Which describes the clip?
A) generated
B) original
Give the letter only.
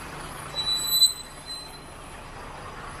B